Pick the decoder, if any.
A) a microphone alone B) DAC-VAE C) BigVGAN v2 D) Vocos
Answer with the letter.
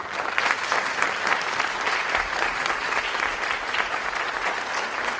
A